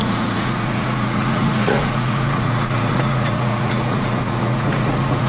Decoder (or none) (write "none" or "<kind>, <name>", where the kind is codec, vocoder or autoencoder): vocoder, Vocos